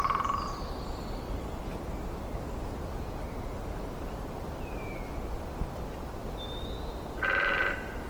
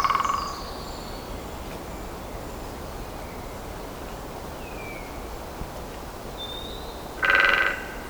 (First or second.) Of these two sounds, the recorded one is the second